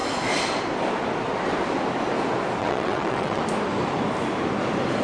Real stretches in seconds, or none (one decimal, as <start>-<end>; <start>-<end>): 0.0-2.6; 3.4-5.0